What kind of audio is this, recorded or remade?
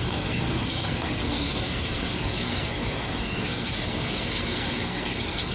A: remade